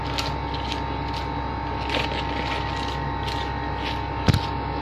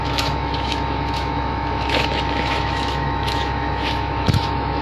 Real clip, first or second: first